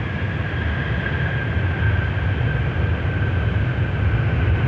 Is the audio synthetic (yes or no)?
no